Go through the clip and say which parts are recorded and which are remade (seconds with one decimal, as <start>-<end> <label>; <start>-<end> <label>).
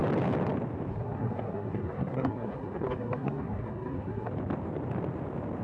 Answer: 0.0-0.9 recorded; 0.9-4.3 remade; 4.3-5.6 recorded